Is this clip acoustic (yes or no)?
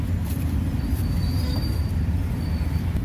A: yes